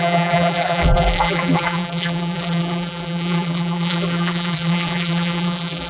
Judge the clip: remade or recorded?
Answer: remade